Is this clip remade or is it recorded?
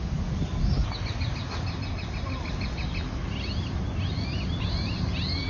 recorded